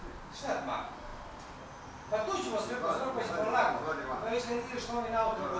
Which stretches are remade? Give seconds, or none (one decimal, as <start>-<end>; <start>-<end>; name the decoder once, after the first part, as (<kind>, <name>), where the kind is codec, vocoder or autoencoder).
none